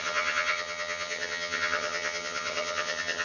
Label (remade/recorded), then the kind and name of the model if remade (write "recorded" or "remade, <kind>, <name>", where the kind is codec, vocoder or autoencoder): remade, vocoder, HiFi-GAN